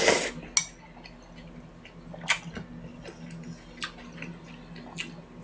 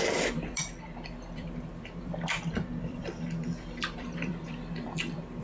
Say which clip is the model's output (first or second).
second